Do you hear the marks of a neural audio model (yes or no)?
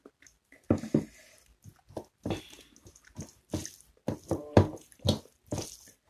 no